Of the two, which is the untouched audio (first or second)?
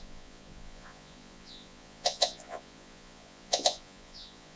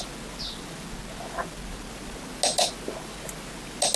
second